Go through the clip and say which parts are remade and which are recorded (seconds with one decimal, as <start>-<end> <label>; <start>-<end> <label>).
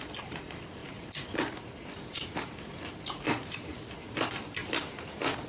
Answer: 0.0-0.8 remade; 0.8-4.1 recorded; 4.1-5.5 remade